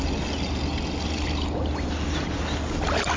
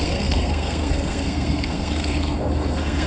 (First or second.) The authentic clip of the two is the first